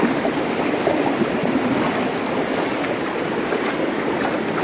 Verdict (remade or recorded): recorded